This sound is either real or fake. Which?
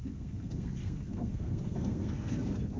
fake